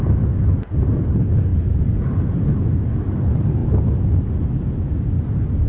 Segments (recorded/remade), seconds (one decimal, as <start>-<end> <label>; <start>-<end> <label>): 0.0-1.5 recorded; 1.5-2.4 remade; 2.4-5.7 recorded